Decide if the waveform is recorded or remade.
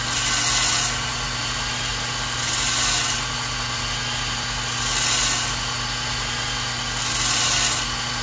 recorded